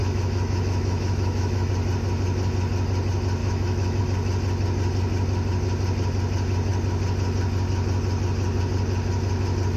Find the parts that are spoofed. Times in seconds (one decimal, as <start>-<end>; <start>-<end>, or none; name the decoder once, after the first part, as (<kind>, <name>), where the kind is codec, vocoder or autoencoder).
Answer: 0.0-1.7 (autoencoder, DAC-VAE); 3.4-4.0